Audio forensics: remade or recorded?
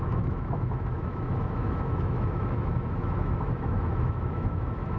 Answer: remade